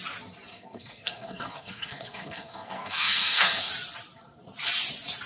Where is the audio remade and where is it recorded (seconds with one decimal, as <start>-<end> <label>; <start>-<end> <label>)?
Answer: 0.0-0.5 recorded; 0.5-3.7 remade; 3.7-5.3 recorded